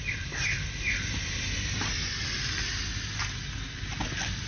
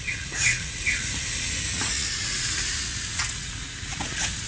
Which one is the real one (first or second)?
first